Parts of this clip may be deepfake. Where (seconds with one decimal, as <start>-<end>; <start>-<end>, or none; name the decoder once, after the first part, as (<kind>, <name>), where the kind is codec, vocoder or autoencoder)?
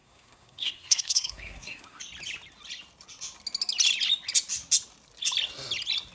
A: 0.0-2.0 (codec, SNAC)